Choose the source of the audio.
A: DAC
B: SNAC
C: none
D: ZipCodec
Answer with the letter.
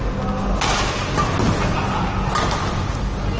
C